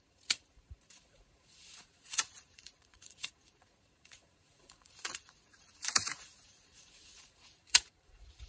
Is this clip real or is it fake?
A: fake